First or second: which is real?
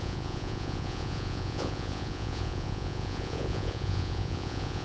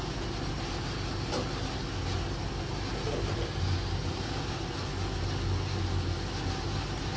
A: second